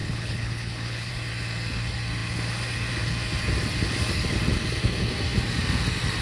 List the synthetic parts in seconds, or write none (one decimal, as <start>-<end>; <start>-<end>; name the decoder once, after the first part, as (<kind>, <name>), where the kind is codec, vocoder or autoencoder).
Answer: 0.0-1.1 (codec, HILCodec)